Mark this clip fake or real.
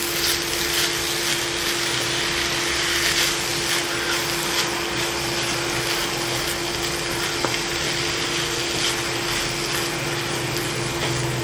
real